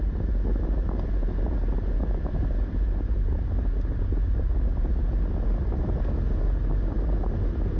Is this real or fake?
real